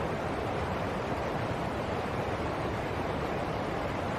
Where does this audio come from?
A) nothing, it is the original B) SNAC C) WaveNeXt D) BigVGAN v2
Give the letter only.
D